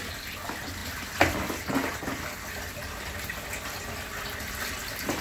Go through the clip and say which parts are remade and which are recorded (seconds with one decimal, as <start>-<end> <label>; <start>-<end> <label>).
0.0-5.2 recorded